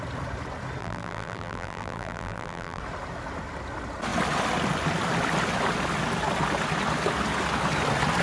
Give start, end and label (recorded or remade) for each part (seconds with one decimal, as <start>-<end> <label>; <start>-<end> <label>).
0.0-0.8 recorded; 0.8-2.8 remade; 2.8-8.2 recorded